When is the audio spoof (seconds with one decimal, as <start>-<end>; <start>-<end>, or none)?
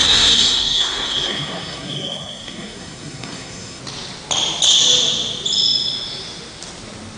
0.0-3.8